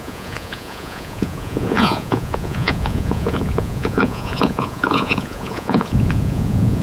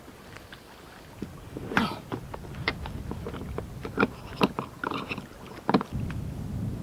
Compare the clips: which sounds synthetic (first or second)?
first